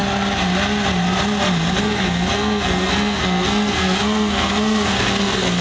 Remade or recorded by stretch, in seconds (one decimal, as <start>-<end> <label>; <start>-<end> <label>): 0.0-1.8 recorded; 1.8-5.6 remade